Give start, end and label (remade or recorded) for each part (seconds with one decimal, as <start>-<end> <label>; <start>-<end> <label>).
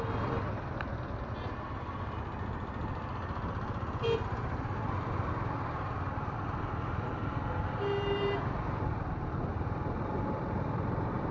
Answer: 0.0-9.5 recorded; 9.5-10.1 remade; 10.1-11.3 recorded